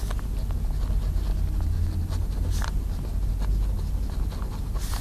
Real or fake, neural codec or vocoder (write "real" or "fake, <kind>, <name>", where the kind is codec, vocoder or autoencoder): real